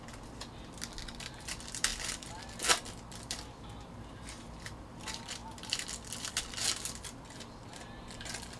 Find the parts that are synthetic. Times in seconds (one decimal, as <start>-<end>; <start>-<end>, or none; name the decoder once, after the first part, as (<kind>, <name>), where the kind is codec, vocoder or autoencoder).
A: none